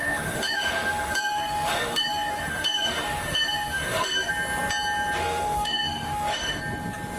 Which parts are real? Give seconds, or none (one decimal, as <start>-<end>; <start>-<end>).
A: 4.3-5.2; 6.6-7.2